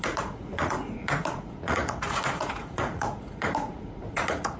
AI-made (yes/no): yes